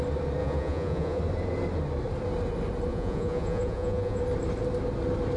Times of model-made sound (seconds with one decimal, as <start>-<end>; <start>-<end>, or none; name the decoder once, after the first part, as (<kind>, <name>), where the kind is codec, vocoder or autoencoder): 0.4-1.2 (vocoder, Vocos); 2.9-4.2